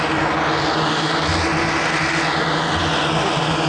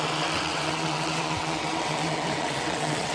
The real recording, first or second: first